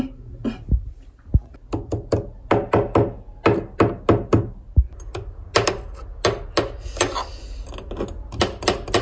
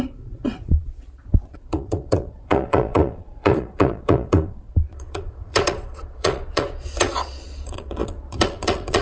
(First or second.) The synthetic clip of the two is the second